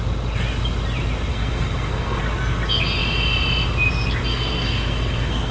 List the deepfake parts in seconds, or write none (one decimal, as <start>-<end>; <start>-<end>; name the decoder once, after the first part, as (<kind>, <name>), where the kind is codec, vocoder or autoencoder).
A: 1.3-2.2 (codec, SNAC); 4.3-5.5